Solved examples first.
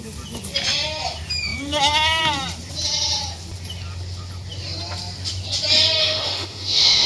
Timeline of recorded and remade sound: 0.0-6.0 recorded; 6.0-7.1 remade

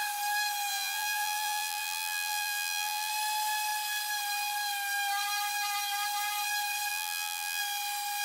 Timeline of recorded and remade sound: 0.0-0.7 recorded; 0.7-3.1 remade; 3.1-6.9 recorded; 6.9-7.6 remade; 7.6-8.2 recorded

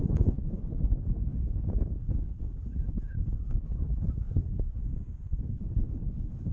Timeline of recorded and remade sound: 0.0-4.8 remade; 4.8-5.4 recorded; 5.4-6.5 remade